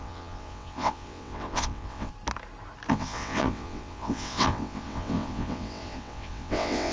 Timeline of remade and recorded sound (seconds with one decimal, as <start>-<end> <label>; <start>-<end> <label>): 0.0-2.1 remade; 2.1-2.9 recorded; 2.9-6.9 remade